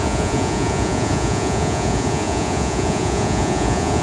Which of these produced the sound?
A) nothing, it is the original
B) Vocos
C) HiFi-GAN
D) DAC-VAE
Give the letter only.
B